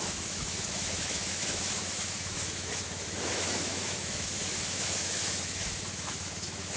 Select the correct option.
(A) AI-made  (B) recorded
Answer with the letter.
A